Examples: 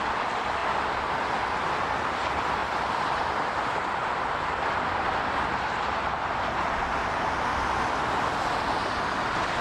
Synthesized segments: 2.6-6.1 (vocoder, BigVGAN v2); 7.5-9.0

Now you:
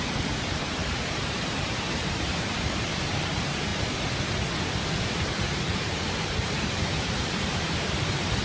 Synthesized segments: 0.0-3.7 (vocoder, BigVGAN v2); 5.0-8.4

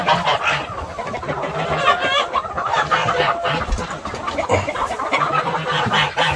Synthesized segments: 3.0-5.6 (vocoder, BigVGAN v2)

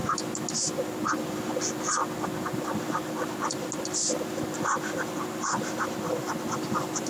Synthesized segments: none

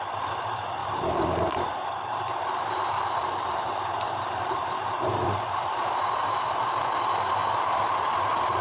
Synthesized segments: 0.8-5.9 (vocoder, BigVGAN v2); 7.4-8.1

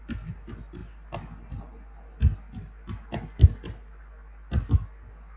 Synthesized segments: none